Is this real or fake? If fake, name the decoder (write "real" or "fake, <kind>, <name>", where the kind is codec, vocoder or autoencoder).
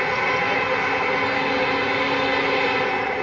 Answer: real